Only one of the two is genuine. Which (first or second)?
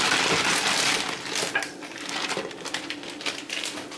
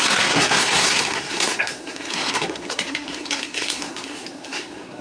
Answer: first